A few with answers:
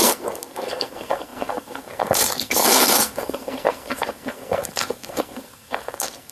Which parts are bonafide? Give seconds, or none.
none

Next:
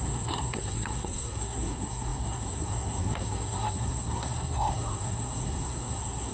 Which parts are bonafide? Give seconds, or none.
none

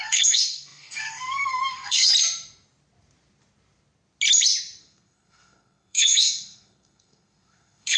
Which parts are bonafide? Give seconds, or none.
2.1-4.8

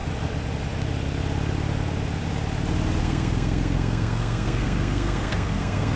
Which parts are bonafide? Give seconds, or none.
0.0-3.0

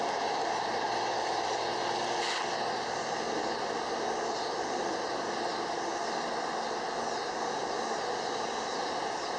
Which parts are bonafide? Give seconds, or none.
0.0-9.4

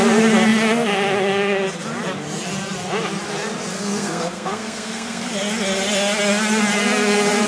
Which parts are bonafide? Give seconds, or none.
0.0-3.7; 5.3-7.5

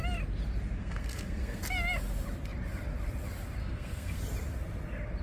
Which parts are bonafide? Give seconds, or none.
0.0-0.8; 1.6-3.6; 4.2-5.2